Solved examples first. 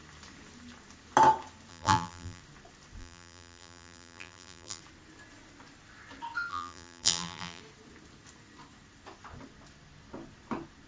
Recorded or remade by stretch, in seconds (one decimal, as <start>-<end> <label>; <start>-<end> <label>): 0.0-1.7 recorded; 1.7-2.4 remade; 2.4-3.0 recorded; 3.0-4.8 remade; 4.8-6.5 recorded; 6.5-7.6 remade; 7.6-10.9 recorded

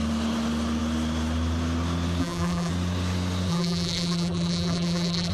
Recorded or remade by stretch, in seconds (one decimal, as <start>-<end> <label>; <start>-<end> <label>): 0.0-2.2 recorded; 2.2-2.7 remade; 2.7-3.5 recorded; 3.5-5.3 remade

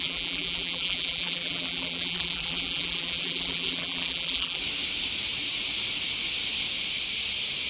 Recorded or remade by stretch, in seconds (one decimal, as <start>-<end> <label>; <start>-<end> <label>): 0.0-4.6 remade; 4.6-7.7 recorded

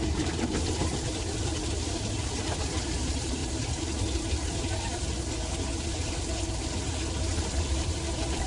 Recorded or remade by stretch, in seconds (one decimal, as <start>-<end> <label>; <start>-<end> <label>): 0.0-3.4 remade; 3.4-7.4 recorded; 7.4-8.5 remade

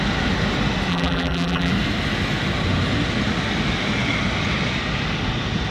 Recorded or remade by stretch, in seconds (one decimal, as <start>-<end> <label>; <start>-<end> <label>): 0.0-0.9 recorded; 0.9-1.7 remade; 1.7-5.7 recorded

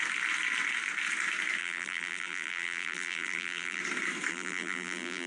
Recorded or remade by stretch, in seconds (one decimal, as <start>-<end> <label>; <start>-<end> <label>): 0.0-1.6 recorded; 1.6-3.8 remade; 3.8-4.3 recorded; 4.3-5.3 remade

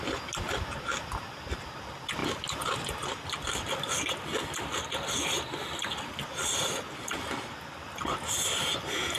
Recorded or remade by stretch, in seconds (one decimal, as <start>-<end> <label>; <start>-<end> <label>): 0.0-9.2 recorded

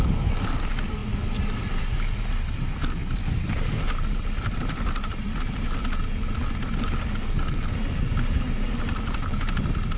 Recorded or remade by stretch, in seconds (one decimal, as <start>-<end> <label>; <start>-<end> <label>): 0.0-3.0 recorded; 3.0-6.0 remade; 6.0-10.0 recorded